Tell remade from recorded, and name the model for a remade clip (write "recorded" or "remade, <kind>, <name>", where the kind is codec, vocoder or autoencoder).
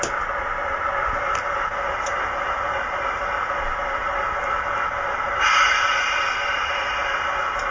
recorded